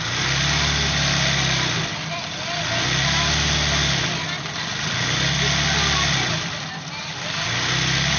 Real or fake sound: fake